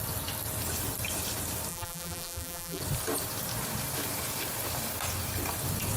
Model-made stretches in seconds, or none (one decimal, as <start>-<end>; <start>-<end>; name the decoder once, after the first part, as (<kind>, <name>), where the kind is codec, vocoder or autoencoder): 1.7-2.8 (vocoder, BigVGAN v2)